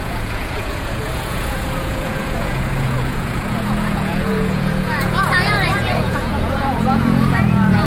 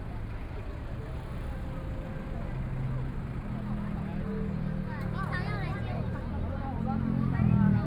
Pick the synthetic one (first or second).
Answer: first